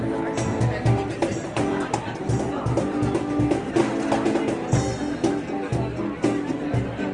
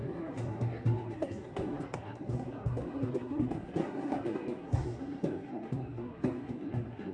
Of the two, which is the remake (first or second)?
second